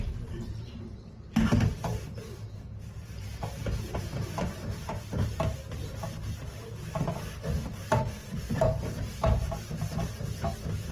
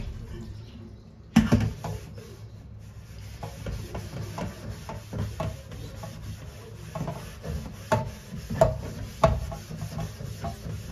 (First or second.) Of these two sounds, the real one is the second